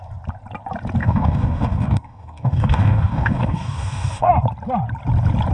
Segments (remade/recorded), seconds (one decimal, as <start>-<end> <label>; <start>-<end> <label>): 0.0-1.0 recorded; 1.0-4.3 remade; 4.3-5.5 recorded